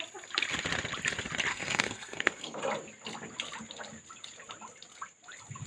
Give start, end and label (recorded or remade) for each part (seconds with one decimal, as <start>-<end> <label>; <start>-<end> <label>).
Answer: 0.0-1.5 recorded; 1.5-2.6 remade; 2.6-5.7 recorded